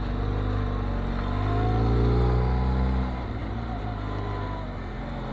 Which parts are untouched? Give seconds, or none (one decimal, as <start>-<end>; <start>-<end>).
0.0-5.3